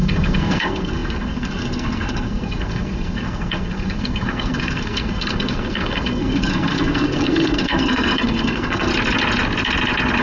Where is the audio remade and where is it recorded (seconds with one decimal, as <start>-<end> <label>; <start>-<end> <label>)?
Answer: 0.0-8.9 remade; 8.9-10.2 recorded

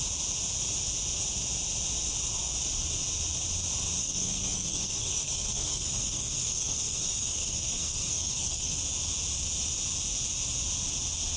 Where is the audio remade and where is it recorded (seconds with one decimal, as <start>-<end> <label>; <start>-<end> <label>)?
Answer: 0.0-4.0 recorded; 4.0-8.8 remade; 8.8-11.4 recorded

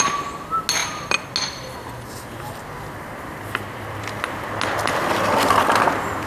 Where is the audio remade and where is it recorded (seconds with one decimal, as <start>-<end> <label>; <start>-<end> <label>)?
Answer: 0.0-6.3 recorded